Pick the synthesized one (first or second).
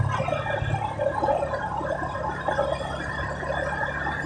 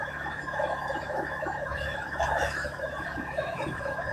second